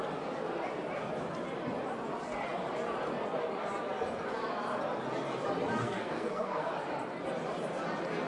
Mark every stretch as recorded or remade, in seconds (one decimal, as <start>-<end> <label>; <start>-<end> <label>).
0.0-5.8 recorded; 5.8-6.7 remade; 6.7-8.3 recorded